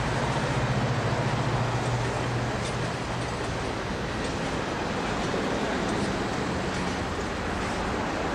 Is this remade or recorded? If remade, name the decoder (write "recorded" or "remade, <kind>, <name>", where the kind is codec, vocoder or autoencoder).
recorded